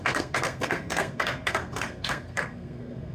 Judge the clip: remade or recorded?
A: remade